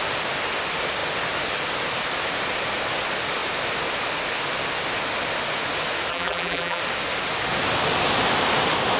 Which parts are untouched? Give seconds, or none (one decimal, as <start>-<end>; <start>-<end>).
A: 0.0-6.1; 6.8-9.0